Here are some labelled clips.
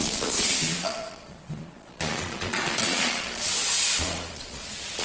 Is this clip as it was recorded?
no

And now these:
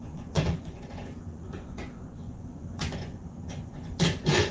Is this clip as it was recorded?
no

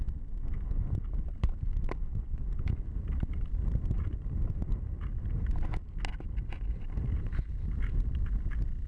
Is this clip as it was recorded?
yes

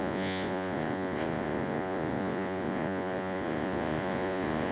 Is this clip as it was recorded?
no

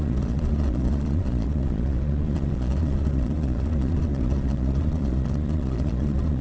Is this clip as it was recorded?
no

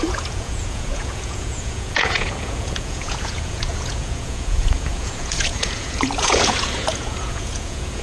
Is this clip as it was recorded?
no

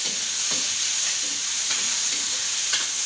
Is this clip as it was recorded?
no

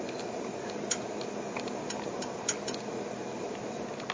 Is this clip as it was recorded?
yes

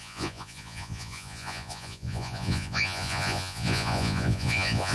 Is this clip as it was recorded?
no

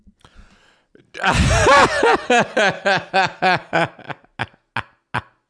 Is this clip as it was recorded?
yes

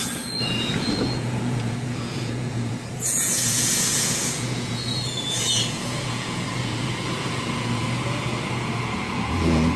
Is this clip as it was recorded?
no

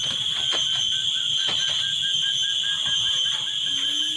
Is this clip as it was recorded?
yes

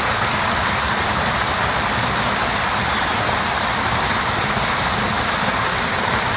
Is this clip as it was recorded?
yes